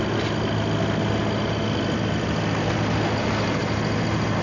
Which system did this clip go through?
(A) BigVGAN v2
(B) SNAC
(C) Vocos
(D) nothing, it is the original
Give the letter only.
D